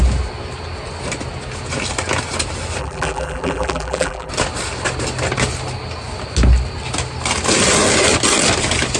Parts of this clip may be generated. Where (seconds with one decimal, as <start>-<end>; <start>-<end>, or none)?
2.8-4.3